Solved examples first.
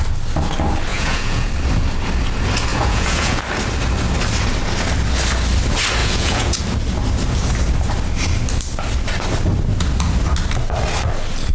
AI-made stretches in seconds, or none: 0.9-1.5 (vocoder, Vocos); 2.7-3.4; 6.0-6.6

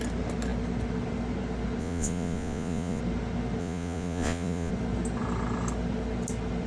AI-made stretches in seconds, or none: 1.8-3.0 (vocoder, Vocos); 3.6-4.7

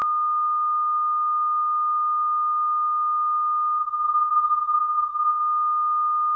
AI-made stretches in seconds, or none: 3.8-5.4 (codec, SNAC)

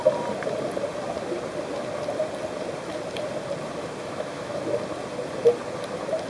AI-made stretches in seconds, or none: 4.0-4.6 (autoencoder, DAC-VAE)